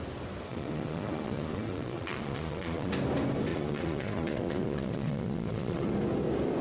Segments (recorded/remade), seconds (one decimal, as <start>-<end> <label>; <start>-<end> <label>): 0.0-0.5 recorded; 0.5-2.9 remade; 2.9-3.5 recorded; 3.5-5.9 remade; 5.9-6.6 recorded